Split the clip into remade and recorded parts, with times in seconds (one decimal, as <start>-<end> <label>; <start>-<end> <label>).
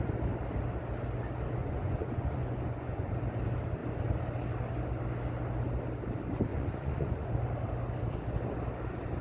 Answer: 0.0-1.6 recorded; 1.6-3.1 remade; 3.1-6.5 recorded; 6.5-7.3 remade; 7.3-9.2 recorded